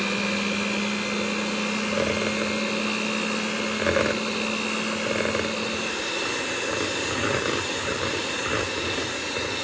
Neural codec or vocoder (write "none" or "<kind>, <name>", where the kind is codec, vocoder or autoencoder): none